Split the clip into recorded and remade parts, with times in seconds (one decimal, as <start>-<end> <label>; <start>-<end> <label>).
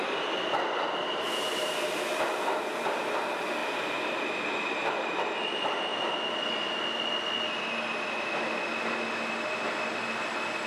0.0-10.7 recorded